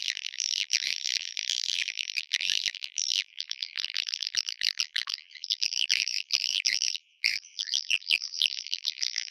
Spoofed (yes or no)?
yes